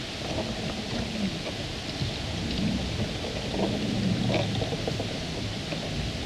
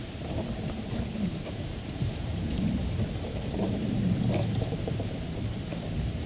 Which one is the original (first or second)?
first